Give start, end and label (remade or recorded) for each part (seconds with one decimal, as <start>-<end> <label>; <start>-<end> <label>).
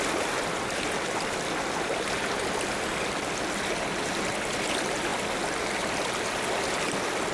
0.0-7.3 recorded